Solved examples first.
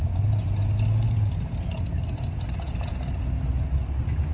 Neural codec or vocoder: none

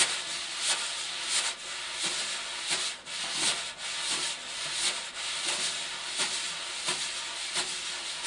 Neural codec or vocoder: none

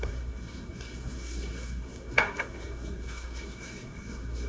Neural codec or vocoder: codec, SNAC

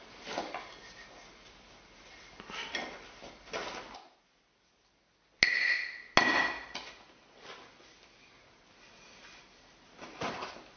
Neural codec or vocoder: none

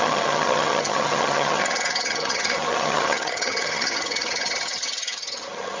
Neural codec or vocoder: vocoder, HiFi-GAN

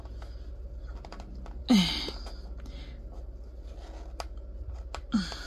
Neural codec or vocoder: none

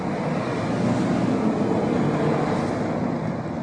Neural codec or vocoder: none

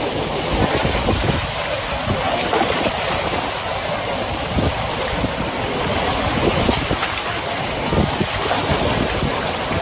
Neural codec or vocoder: none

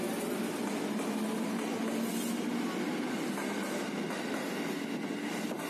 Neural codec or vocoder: none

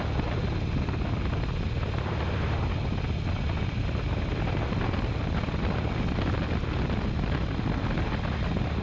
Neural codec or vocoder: none